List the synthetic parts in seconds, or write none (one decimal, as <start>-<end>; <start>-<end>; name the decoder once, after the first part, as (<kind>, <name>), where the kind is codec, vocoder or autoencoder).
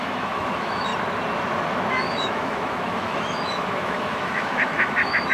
0.0-0.9 (autoencoder, DAC-VAE); 1.9-5.3